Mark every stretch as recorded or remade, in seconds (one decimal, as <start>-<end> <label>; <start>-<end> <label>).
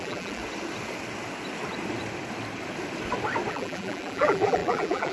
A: 0.0-0.4 remade; 0.4-3.5 recorded; 3.5-5.1 remade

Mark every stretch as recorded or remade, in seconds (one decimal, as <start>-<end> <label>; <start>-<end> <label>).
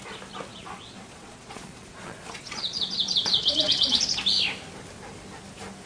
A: 0.0-0.5 recorded; 0.5-4.0 remade; 4.0-5.9 recorded